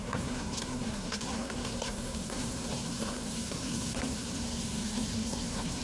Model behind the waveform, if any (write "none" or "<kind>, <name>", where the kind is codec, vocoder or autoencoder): codec, SNAC